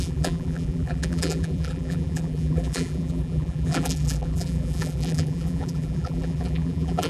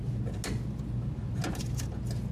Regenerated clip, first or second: first